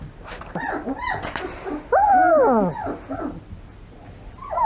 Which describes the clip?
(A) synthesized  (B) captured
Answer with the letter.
B